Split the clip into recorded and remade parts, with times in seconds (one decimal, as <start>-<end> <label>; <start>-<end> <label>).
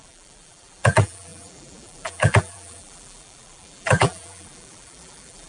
0.0-5.5 remade